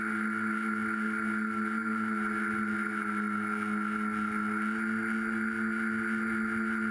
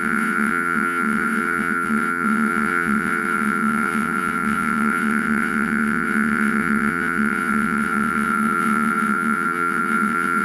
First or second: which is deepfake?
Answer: second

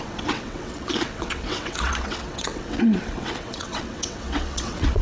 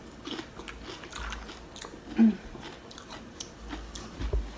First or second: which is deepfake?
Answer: first